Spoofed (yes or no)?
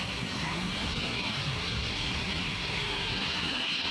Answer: yes